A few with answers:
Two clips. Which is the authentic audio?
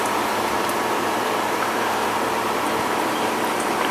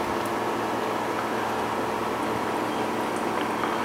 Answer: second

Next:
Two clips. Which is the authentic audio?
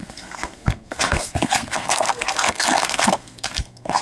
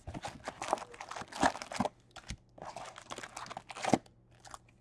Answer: second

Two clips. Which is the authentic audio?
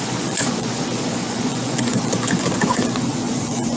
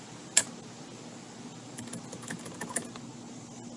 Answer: second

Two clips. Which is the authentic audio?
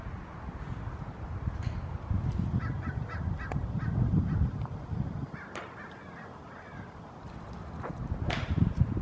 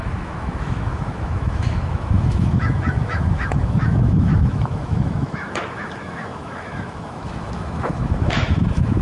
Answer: first